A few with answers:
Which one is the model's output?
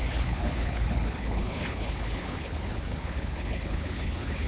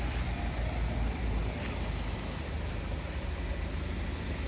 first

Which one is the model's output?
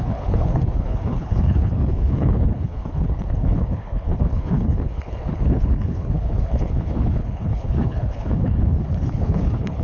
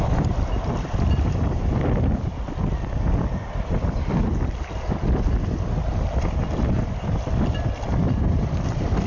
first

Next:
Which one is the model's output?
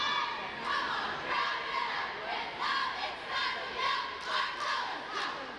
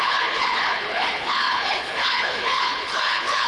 second